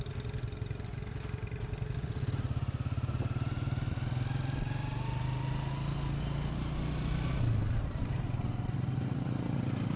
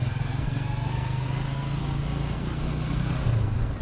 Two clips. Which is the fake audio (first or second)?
second